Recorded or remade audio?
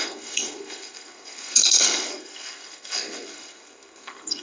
remade